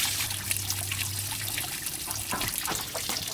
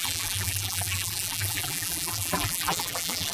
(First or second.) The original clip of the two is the first